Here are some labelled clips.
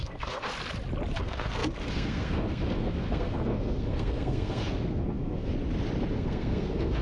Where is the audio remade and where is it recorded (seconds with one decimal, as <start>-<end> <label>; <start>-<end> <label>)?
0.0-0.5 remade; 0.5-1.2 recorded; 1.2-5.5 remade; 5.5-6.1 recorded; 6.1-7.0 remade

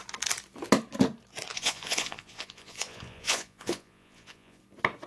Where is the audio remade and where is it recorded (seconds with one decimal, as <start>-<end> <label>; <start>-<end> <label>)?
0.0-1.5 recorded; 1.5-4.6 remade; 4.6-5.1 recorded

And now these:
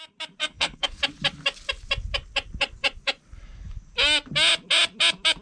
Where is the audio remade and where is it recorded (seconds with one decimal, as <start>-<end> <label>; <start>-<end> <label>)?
0.0-0.4 recorded; 0.4-1.0 remade; 1.0-5.4 recorded

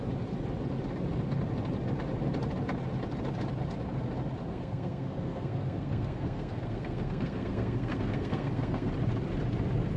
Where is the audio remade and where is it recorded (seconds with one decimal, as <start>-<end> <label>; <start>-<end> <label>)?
0.0-4.5 recorded; 4.5-8.9 remade; 8.9-10.0 recorded